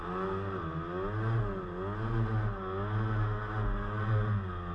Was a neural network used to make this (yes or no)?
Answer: no